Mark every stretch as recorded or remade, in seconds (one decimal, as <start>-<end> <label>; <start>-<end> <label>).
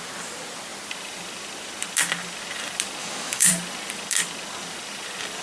0.0-3.0 recorded; 3.0-3.5 remade; 3.5-5.4 recorded